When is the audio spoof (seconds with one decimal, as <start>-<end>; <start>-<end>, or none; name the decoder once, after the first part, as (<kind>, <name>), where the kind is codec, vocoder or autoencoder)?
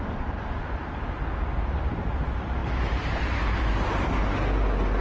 none